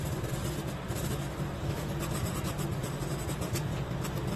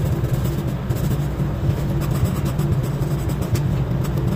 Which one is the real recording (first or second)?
second